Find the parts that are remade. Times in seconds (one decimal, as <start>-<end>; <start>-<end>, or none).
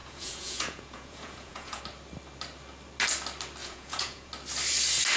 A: 0.0-1.8; 3.6-4.3